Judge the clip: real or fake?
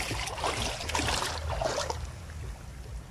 real